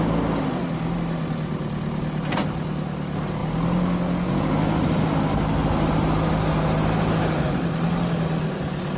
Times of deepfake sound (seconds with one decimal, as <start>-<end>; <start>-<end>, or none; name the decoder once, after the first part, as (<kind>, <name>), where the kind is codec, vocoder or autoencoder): none

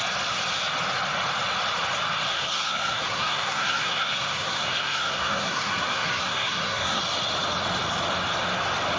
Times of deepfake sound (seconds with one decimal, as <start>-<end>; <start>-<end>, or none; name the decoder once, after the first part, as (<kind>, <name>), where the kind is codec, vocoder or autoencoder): 2.3-7.0 (codec, SNAC)

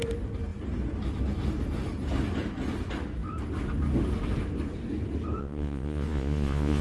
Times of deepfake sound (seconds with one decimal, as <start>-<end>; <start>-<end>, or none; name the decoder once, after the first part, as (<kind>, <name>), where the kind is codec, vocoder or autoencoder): 5.4-6.8 (vocoder, Vocos)

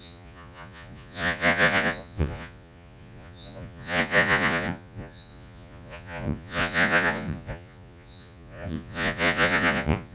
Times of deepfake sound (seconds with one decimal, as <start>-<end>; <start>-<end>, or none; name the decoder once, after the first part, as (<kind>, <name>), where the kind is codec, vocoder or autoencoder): 0.0-10.1 (vocoder, Vocos)

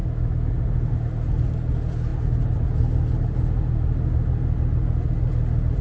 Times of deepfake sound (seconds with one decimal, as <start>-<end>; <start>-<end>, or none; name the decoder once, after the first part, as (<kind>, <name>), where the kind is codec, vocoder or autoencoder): 0.0-0.5 (autoencoder, DAC-VAE)

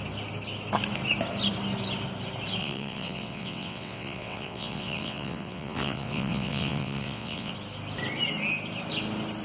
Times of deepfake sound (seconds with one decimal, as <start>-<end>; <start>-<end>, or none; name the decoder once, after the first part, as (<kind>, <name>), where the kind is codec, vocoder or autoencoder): 2.6-7.5 (vocoder, WaveNeXt)

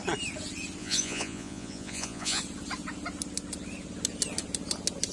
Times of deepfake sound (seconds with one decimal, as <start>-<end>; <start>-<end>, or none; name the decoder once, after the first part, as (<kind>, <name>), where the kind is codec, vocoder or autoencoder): 0.8-2.4 (vocoder, Vocos)